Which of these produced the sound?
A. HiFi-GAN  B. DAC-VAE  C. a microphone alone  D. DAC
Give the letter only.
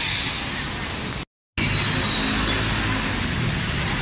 C